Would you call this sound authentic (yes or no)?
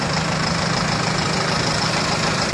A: no